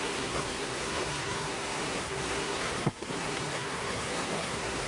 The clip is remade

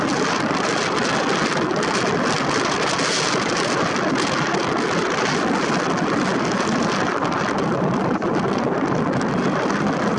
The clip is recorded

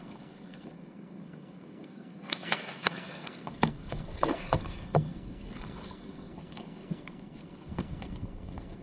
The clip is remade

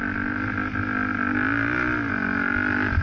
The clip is recorded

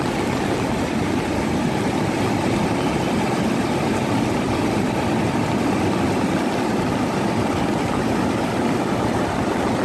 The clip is recorded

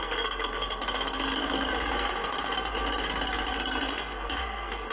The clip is remade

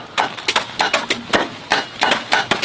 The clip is recorded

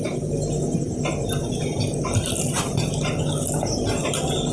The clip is recorded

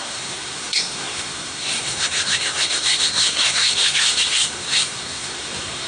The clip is remade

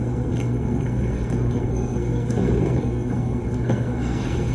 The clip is remade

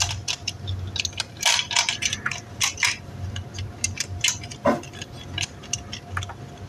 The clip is recorded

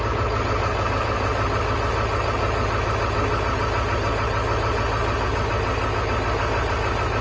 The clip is recorded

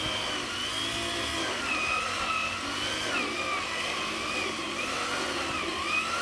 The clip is recorded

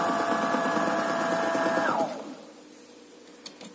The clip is recorded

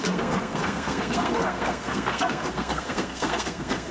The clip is remade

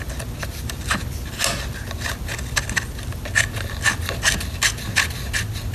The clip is recorded